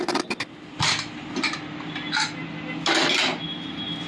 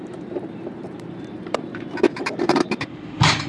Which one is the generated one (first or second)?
second